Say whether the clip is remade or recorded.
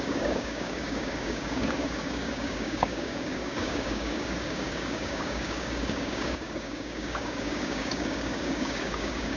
remade